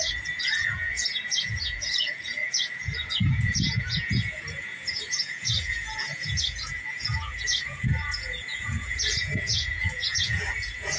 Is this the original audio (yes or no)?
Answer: no